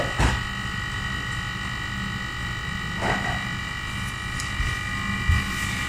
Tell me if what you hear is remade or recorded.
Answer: recorded